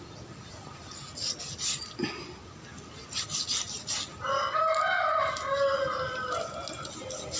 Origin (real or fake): real